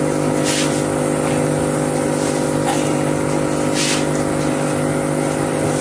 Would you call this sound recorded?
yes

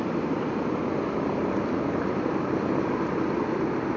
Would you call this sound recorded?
yes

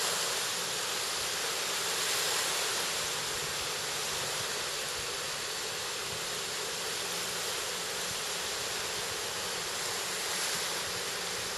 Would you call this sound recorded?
yes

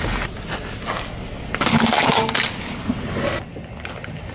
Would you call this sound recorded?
yes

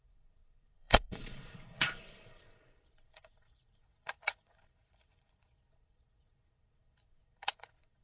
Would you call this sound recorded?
no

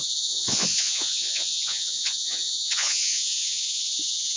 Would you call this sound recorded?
no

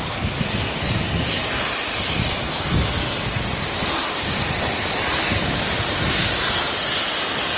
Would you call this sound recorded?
yes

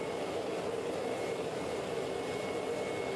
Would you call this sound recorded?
yes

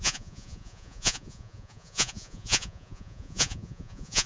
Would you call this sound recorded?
no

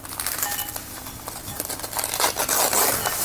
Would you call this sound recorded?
yes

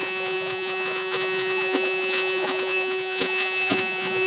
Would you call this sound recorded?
no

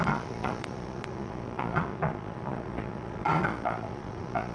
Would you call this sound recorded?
no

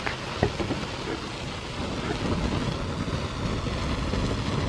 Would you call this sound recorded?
yes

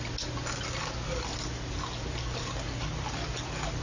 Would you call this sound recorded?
yes